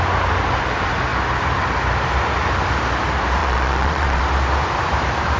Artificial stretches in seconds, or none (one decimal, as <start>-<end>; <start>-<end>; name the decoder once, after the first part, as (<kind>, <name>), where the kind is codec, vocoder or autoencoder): 3.4-4.2 (vocoder, Vocos)